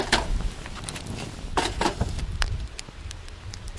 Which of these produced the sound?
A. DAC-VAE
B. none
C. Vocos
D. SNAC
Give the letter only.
B